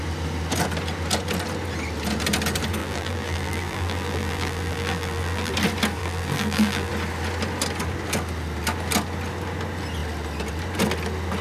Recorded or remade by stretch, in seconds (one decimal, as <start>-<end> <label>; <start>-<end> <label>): 0.0-2.8 recorded; 2.8-5.5 remade; 5.5-6.0 recorded; 6.0-6.9 remade; 6.9-11.4 recorded